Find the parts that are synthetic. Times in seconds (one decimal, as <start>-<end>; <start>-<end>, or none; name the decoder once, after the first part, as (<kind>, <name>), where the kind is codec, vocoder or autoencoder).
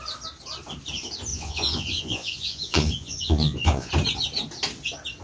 1.3-3.9 (vocoder, Vocos)